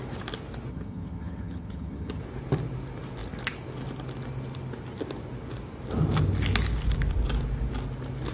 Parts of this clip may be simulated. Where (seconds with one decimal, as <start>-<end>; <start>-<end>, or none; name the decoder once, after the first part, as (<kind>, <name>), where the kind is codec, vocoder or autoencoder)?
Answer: 0.7-2.2 (vocoder, HiFi-GAN)